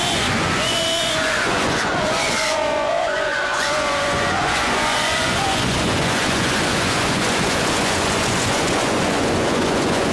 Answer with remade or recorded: remade